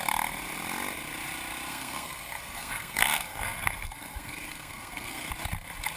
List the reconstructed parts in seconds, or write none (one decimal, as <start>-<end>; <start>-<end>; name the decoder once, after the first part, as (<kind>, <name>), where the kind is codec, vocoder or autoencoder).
1.7-5.3 (codec, SNAC)